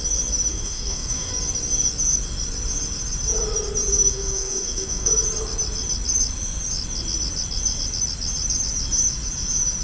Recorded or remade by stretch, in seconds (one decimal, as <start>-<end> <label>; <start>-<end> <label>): 0.0-0.5 recorded; 0.5-1.3 remade; 1.3-4.1 recorded; 4.1-5.1 remade; 5.1-9.8 recorded